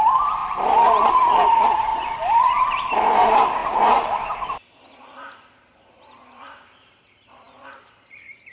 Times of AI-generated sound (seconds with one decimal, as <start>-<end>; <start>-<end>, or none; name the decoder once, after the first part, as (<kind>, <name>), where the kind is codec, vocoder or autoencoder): 0.0-8.5 (vocoder, BigVGAN v2)